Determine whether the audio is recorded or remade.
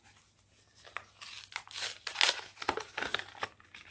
recorded